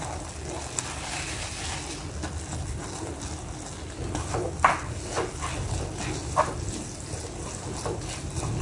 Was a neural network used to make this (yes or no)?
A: no